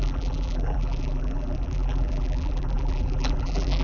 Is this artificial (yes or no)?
yes